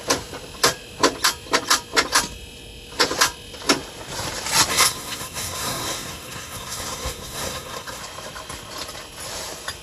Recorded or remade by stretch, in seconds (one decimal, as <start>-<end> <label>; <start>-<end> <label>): 0.0-4.7 recorded; 4.7-8.0 remade; 8.0-9.8 recorded